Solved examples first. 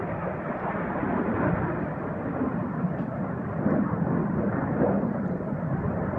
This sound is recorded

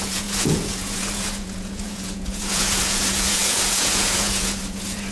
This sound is remade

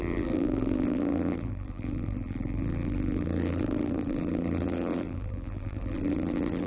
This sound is remade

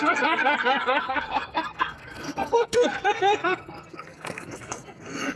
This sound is remade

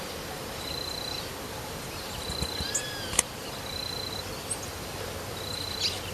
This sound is recorded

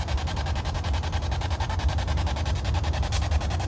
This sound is recorded